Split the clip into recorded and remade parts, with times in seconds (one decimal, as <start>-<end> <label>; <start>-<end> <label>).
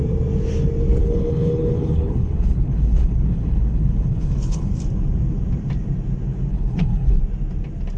0.0-1.0 recorded; 1.0-4.7 remade; 4.7-6.5 recorded; 6.5-7.2 remade; 7.2-8.0 recorded